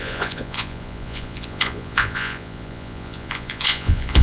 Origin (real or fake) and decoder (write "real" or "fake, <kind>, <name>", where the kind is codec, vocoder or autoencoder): fake, vocoder, Vocos